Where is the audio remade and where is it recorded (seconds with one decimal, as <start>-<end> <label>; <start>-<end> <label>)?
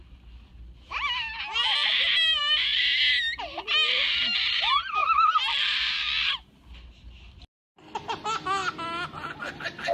0.0-9.9 recorded